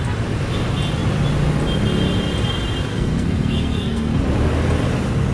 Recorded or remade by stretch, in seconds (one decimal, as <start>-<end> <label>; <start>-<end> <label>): 0.0-2.9 recorded; 2.9-4.2 remade; 4.2-5.3 recorded